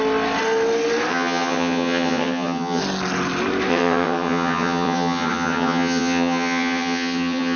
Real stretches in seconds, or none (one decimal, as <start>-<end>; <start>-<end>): 0.0-1.1; 2.8-3.7